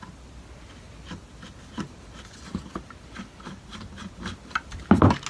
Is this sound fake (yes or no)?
no